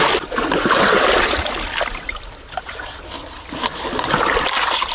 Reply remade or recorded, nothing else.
remade